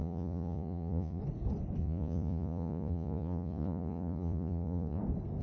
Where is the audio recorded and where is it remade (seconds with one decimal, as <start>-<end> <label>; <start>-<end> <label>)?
0.0-1.2 remade; 1.2-1.8 recorded; 1.8-5.0 remade; 5.0-5.4 recorded